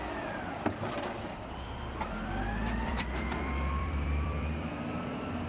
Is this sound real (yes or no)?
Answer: no